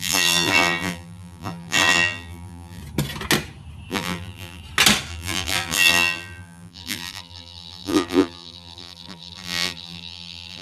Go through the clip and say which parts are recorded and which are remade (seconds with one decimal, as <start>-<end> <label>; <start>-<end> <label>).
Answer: 0.0-2.8 remade; 2.8-3.9 recorded; 3.9-4.6 remade; 4.6-5.1 recorded; 5.1-10.6 remade